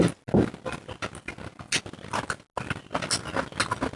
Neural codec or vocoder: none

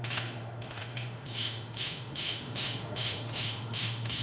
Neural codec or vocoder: autoencoder, DAC-VAE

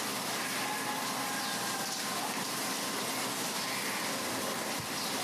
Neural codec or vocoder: none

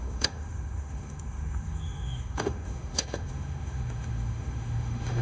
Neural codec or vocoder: autoencoder, DAC-VAE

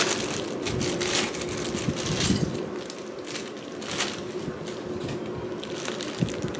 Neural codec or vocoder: none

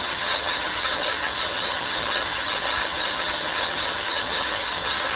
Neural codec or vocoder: vocoder, HiFi-GAN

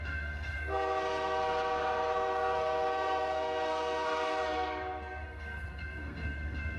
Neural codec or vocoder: codec, SNAC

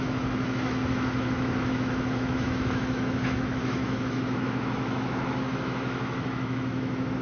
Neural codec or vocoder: autoencoder, DAC-VAE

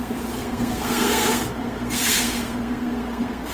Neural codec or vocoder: codec, SNAC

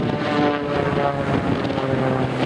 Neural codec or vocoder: none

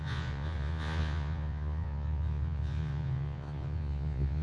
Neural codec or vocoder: vocoder, Vocos